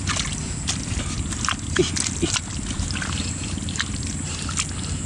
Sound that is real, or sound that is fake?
real